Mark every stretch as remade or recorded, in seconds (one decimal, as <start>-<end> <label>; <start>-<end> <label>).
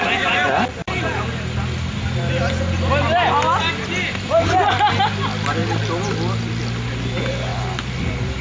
0.0-8.4 recorded